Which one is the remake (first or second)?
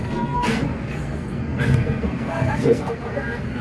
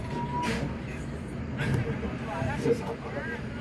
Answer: first